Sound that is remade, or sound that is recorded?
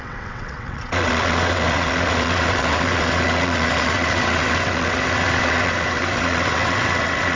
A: remade